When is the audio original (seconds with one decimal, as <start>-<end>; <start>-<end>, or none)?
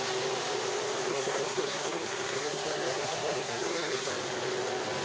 0.0-1.1; 4.1-5.0